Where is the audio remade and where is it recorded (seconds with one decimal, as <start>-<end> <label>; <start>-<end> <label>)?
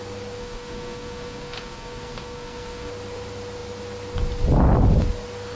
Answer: 0.0-0.4 recorded; 0.4-2.9 remade; 2.9-5.6 recorded